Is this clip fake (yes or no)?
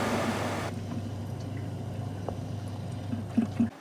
no